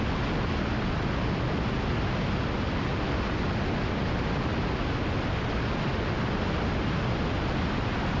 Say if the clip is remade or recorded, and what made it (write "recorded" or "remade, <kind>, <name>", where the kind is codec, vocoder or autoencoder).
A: recorded